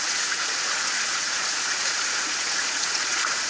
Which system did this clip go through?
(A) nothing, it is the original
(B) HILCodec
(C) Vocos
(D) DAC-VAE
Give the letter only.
C